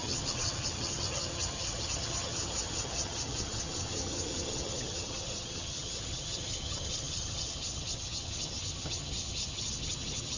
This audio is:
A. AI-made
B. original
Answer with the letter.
A